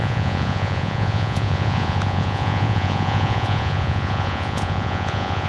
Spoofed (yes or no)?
yes